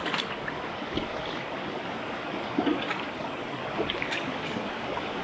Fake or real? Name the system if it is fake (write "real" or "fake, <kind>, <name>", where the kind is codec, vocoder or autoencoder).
fake, codec, DAC